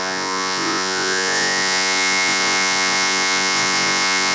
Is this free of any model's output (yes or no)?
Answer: no